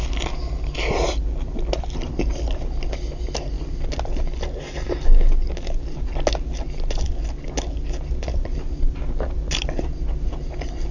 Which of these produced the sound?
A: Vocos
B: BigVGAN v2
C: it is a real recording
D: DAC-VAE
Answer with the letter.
C